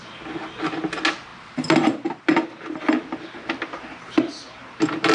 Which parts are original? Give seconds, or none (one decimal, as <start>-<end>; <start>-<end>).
0.0-5.1